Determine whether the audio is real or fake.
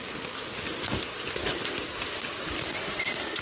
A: real